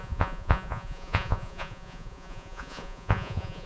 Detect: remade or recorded remade